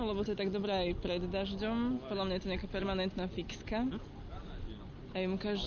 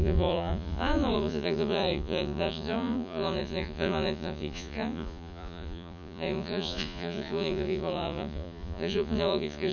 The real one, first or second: first